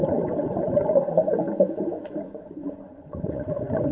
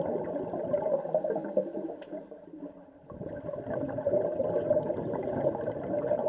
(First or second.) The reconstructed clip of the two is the first